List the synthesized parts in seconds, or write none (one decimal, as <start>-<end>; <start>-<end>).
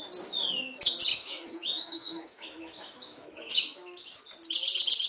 1.1-4.2